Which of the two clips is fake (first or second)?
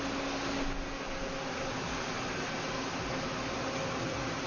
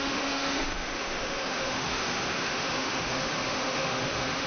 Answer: second